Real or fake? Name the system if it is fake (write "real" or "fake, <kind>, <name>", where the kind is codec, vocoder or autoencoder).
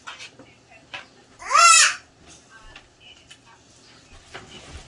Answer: real